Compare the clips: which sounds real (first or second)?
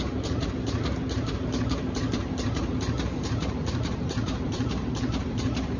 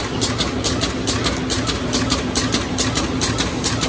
second